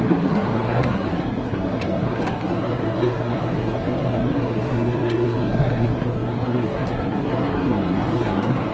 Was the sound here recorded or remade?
remade